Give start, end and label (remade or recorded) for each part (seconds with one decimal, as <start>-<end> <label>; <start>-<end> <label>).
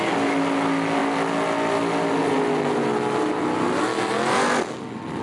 0.0-5.2 recorded